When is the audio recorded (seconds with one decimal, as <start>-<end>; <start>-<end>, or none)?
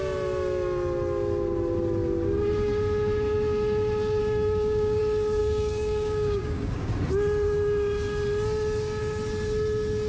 0.0-4.2; 5.0-5.4; 6.9-10.1